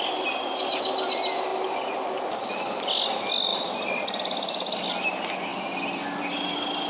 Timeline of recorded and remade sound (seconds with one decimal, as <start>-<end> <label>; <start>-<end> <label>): 0.0-3.5 recorded; 3.5-4.9 remade; 4.9-6.9 recorded